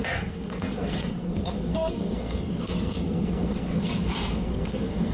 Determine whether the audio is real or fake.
fake